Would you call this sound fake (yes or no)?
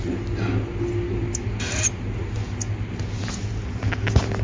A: no